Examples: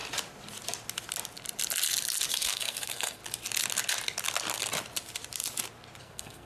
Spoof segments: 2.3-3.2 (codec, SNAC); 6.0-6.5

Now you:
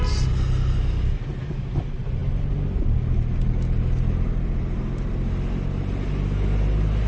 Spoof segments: none